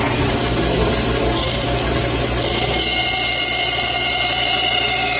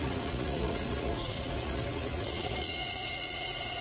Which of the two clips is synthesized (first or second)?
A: second